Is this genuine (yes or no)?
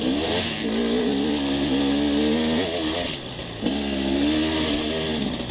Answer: yes